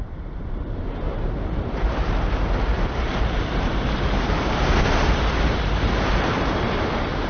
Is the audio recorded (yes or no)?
no